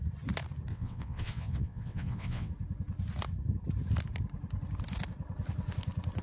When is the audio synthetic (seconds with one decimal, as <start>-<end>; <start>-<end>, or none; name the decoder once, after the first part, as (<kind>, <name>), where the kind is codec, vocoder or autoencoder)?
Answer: 0.7-2.5 (vocoder, WaveNeXt)